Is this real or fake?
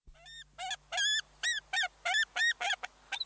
real